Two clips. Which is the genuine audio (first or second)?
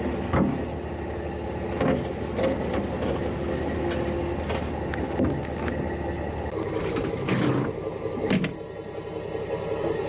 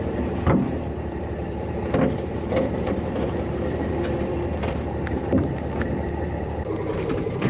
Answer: first